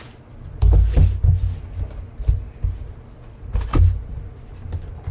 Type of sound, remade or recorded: recorded